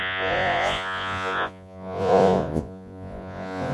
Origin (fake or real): fake